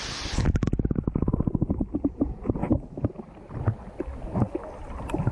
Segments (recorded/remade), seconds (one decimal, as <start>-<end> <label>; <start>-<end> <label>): 0.0-5.3 recorded